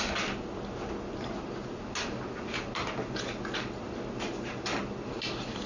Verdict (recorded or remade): recorded